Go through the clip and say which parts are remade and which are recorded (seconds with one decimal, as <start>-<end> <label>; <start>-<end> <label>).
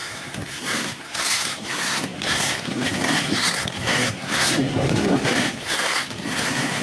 0.0-6.8 remade